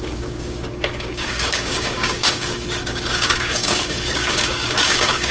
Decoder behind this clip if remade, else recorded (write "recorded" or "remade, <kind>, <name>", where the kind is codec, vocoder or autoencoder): remade, codec, DAC